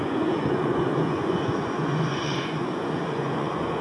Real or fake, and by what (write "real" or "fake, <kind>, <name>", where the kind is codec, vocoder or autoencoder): fake, vocoder, Vocos